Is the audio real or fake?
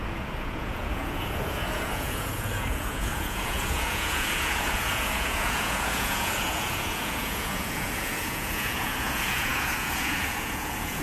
fake